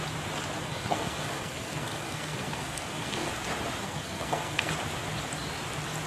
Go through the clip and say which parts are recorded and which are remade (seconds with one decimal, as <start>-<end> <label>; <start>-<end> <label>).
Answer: 0.0-0.6 recorded; 0.6-3.3 remade; 3.3-3.8 recorded; 3.8-4.7 remade; 4.7-6.1 recorded